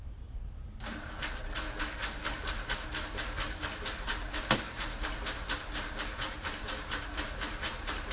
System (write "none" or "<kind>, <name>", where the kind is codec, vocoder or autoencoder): vocoder, BigVGAN v2